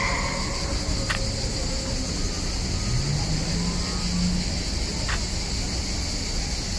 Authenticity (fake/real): real